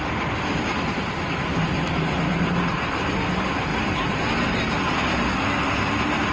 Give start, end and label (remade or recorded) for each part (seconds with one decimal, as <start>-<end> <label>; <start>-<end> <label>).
0.0-6.3 recorded